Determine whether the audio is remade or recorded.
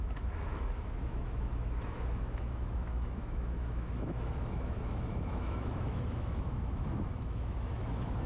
remade